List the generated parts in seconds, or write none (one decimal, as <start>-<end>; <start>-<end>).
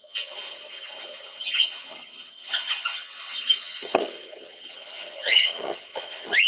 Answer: 0.0-6.5